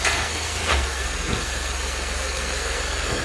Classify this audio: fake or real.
fake